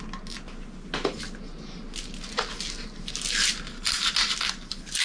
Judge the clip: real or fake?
real